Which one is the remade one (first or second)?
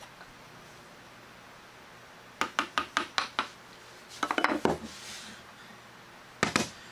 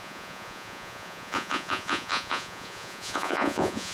second